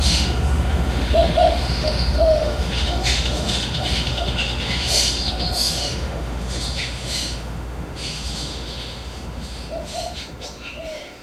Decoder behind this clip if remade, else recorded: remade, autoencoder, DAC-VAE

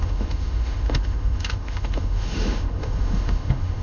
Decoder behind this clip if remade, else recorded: remade, autoencoder, DAC-VAE